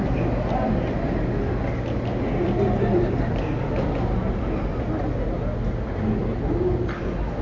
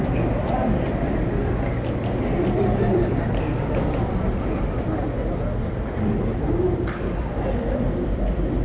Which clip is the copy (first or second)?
second